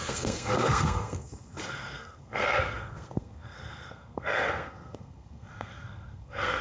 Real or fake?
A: fake